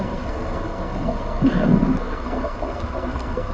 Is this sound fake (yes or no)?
yes